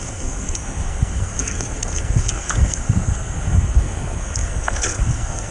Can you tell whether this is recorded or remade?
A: remade